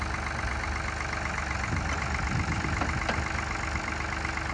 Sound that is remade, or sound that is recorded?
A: recorded